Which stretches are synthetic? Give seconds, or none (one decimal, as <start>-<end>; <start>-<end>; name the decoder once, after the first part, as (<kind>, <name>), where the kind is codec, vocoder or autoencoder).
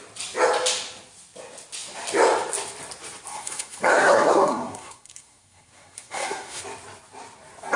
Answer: 3.3-6.6 (codec, SNAC)